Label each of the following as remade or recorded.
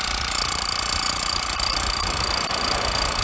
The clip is recorded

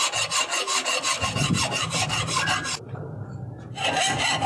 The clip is recorded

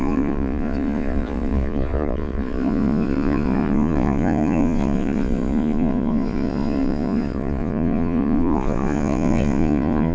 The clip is remade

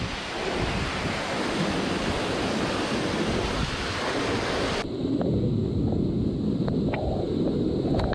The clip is recorded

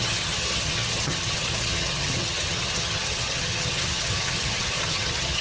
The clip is remade